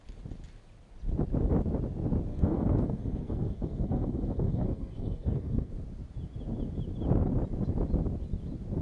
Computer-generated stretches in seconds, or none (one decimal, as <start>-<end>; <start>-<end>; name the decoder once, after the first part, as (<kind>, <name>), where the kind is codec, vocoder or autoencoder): 2.3-5.7 (codec, SNAC)